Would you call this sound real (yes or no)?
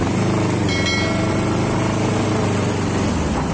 yes